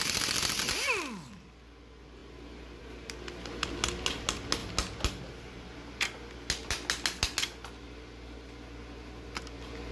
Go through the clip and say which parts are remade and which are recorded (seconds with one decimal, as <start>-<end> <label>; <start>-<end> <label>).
0.0-9.9 recorded